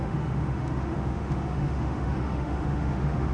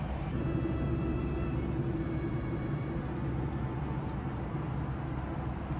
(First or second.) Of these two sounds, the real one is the second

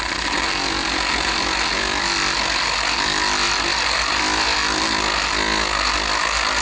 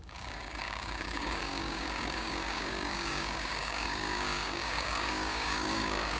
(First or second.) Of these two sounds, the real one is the first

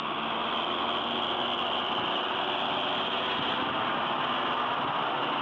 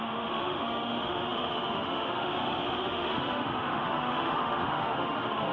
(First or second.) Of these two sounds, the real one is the first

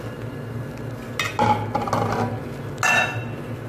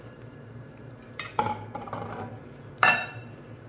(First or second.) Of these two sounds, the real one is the first